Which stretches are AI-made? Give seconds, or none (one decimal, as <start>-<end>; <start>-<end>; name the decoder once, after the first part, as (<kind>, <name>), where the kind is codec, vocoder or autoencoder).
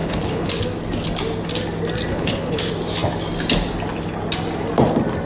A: 0.0-0.5 (codec, HILCodec); 2.1-2.6